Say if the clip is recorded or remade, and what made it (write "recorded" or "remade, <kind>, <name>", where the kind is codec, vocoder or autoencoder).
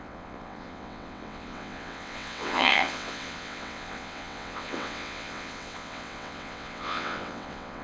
remade, vocoder, WaveNeXt